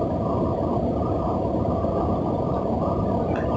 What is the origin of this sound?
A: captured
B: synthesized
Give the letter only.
A